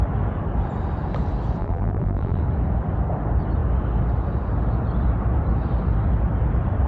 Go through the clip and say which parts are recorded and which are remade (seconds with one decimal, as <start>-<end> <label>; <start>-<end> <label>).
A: 0.0-1.6 recorded; 1.6-2.4 remade; 2.4-6.9 recorded